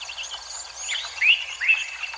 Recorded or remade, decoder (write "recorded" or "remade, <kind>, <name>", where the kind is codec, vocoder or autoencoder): recorded